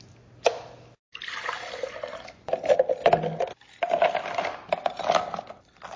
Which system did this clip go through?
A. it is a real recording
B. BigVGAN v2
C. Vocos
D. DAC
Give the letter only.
A